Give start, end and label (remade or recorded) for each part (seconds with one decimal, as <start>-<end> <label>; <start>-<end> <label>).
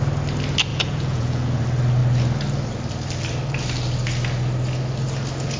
0.0-0.7 recorded; 0.7-1.6 remade; 1.6-5.6 recorded